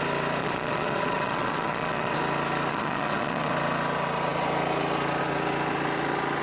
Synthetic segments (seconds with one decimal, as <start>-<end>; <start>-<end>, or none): 0.4-2.2; 2.7-3.5